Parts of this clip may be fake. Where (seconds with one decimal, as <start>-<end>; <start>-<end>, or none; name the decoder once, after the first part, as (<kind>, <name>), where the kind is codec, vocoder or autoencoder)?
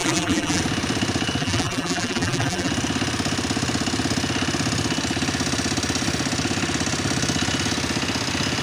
0.0-0.6 (vocoder, BigVGAN v2); 1.4-2.7